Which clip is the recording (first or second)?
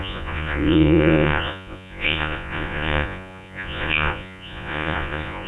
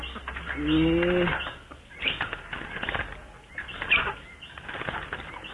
second